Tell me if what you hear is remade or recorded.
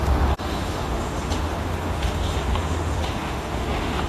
remade